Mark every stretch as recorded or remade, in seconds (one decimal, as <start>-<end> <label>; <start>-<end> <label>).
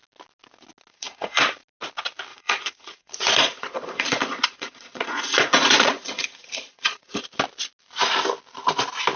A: 0.0-0.9 recorded; 0.9-1.4 remade; 1.4-2.3 recorded; 2.3-7.2 remade; 7.2-9.2 recorded